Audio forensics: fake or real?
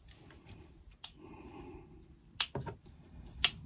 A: real